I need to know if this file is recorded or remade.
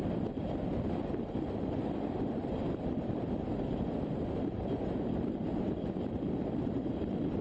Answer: remade